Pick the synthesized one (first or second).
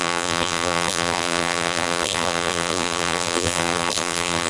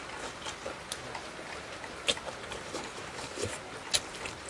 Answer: first